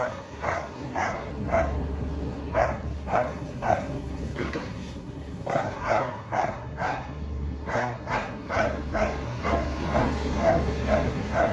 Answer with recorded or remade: remade